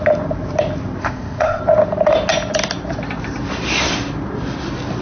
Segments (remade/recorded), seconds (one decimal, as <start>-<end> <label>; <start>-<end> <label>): 0.0-1.0 recorded; 1.0-1.6 remade; 1.6-5.0 recorded